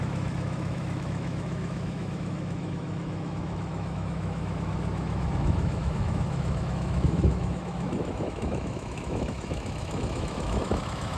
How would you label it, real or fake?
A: fake